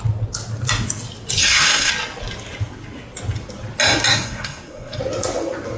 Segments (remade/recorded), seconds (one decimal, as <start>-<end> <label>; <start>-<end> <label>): 0.0-1.4 recorded; 1.4-1.9 remade; 1.9-4.1 recorded; 4.1-5.0 remade; 5.0-5.8 recorded